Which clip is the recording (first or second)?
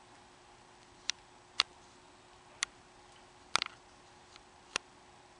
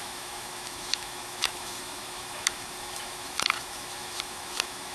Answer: first